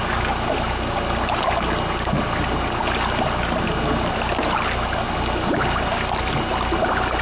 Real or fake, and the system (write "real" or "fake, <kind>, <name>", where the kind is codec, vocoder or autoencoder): real